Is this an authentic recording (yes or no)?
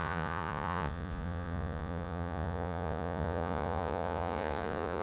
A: no